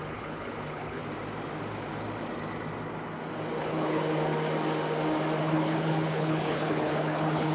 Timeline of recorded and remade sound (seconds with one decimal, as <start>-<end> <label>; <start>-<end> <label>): 0.0-1.0 remade; 1.0-3.6 recorded; 3.6-4.0 remade; 4.0-5.4 recorded; 5.4-7.5 remade